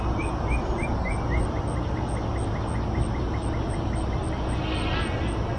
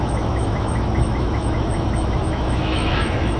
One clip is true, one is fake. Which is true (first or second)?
first